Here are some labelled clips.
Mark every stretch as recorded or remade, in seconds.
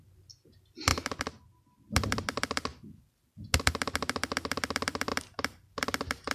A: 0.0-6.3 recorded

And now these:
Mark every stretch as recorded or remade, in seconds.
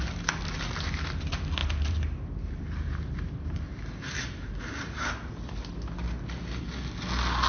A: 0.0-1.6 recorded; 1.6-5.3 remade; 5.3-7.5 recorded